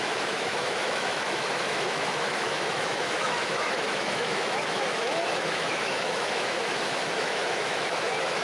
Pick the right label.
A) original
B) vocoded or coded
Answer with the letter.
B